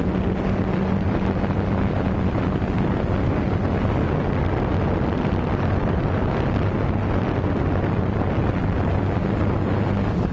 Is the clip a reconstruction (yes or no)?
no